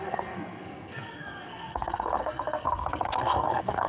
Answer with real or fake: fake